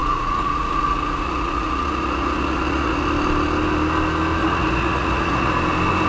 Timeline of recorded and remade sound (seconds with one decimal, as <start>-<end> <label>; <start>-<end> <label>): 0.0-3.0 remade; 3.0-4.4 recorded; 4.4-5.5 remade; 5.5-6.1 recorded